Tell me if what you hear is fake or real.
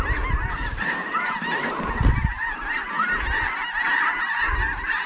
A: real